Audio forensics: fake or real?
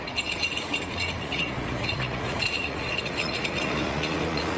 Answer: fake